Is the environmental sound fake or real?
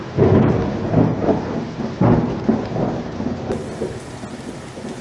real